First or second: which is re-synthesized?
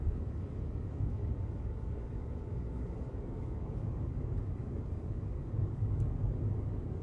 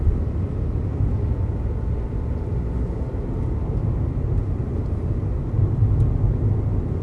first